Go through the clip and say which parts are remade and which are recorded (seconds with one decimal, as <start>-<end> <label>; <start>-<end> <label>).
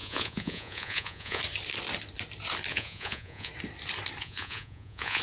0.0-1.4 remade; 1.4-2.7 recorded; 2.7-3.5 remade; 3.5-4.2 recorded; 4.2-5.2 remade